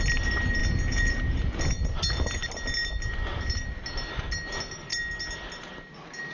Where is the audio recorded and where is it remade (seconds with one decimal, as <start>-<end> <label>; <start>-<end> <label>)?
0.0-0.6 recorded; 0.6-1.6 remade; 1.6-6.3 recorded